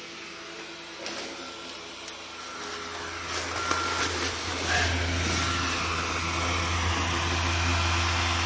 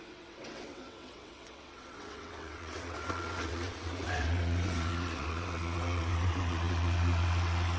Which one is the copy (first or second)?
second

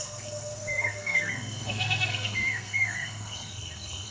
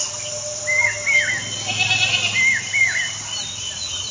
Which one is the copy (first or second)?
first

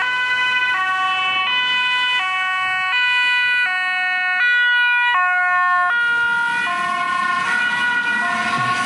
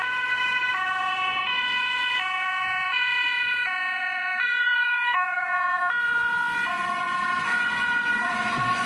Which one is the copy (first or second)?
second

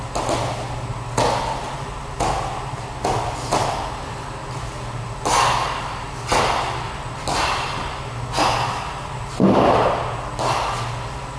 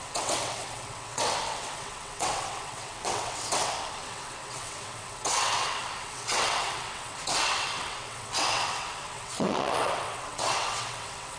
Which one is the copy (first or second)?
second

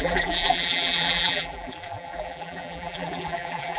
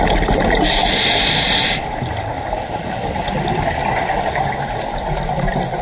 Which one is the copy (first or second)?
first